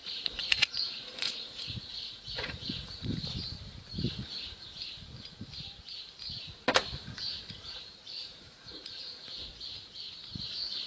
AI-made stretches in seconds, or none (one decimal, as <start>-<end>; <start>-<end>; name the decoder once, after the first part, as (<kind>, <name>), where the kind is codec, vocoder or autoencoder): 0.0-3.1 (vocoder, Vocos); 8.2-9.5

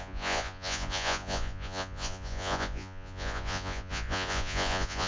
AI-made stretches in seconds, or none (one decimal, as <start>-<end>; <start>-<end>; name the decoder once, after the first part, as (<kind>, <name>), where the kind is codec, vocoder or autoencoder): 0.0-5.1 (vocoder, Vocos)